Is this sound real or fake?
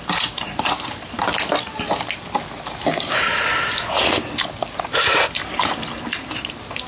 real